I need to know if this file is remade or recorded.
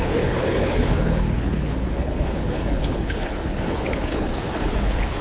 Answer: remade